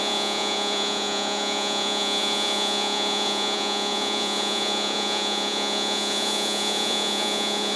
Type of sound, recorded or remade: remade